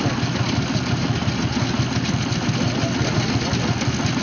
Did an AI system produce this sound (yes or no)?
no